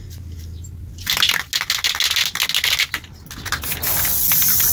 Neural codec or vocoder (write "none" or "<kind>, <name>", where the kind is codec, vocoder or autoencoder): none